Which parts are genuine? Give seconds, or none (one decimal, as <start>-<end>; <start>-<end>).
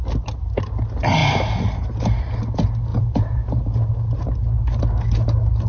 0.0-2.9; 3.9-5.7